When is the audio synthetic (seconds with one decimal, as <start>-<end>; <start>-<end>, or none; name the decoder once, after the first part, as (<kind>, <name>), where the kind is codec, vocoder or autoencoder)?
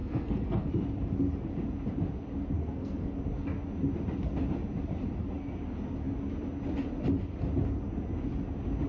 0.0-0.7 (codec, SNAC); 2.6-3.2